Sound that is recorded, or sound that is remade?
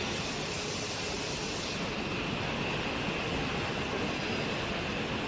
recorded